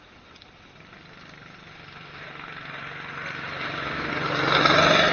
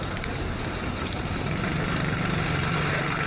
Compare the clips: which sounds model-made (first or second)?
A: second